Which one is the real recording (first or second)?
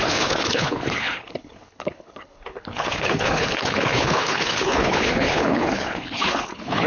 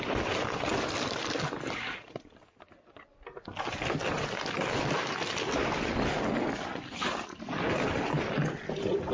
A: second